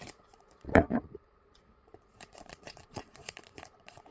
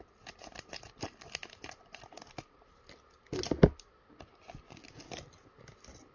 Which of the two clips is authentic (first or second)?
second